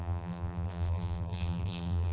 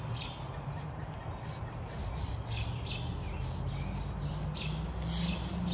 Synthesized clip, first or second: first